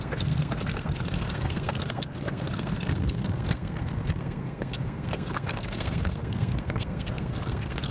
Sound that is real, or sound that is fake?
fake